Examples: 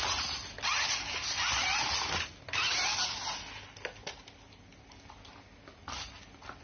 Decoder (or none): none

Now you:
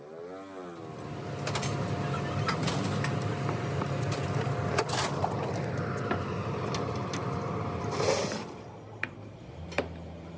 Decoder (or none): none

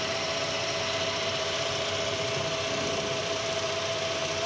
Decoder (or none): vocoder, BigVGAN v2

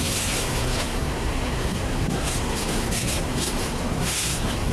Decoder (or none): codec, SNAC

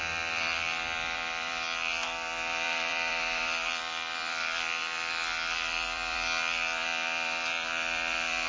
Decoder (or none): vocoder, BigVGAN v2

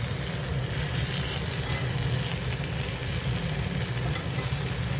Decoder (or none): none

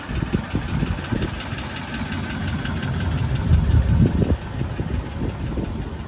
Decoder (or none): none